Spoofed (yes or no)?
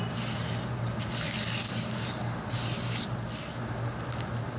no